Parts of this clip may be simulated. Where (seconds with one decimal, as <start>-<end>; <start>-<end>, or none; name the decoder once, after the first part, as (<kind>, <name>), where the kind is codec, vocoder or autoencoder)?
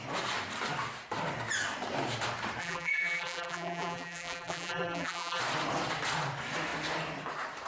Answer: 2.6-5.4 (vocoder, BigVGAN v2)